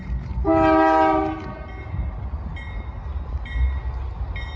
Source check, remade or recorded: recorded